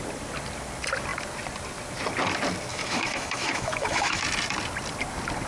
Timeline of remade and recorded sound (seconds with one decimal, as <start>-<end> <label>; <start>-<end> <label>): 0.0-2.7 recorded; 2.7-4.2 remade; 4.2-5.5 recorded